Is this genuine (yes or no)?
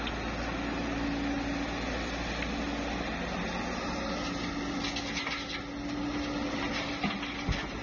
yes